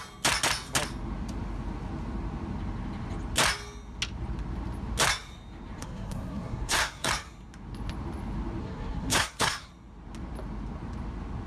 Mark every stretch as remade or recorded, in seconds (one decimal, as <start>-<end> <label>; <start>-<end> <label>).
0.0-5.8 recorded; 5.8-7.1 remade; 7.1-8.6 recorded; 8.6-9.7 remade; 9.7-11.5 recorded